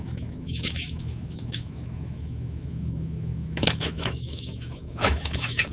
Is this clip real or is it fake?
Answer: fake